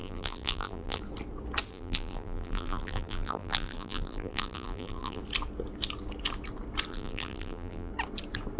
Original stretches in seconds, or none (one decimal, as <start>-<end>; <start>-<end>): 1.0-1.7; 5.2-6.9; 7.9-8.6

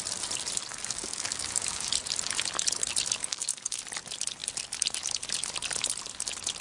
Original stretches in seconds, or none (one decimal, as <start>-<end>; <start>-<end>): 0.0-0.7; 1.9-3.2; 3.8-6.6

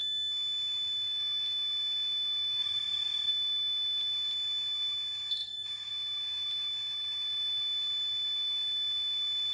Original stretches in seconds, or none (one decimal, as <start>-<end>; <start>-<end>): 0.0-2.6; 3.3-5.4; 5.9-9.5

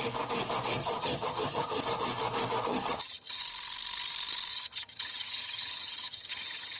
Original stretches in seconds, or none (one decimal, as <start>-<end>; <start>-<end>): 0.0-0.8; 1.8-2.7; 3.4-4.5

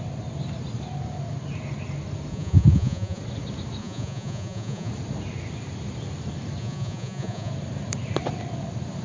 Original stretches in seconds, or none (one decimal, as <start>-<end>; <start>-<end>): 0.0-2.3; 3.2-3.8; 4.9-6.6; 7.5-9.0

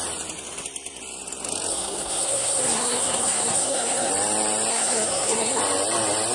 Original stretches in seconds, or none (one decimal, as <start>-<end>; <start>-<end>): 0.0-1.7; 4.1-4.7; 5.6-6.3

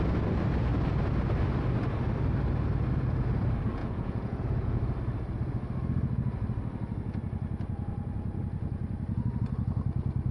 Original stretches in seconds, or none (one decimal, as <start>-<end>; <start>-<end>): 0.0-3.8; 4.8-10.3

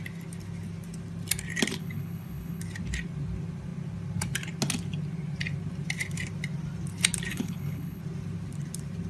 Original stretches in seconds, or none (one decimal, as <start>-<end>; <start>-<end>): 0.0-1.8; 2.6-7.3; 8.0-9.1